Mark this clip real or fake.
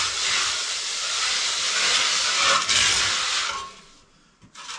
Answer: real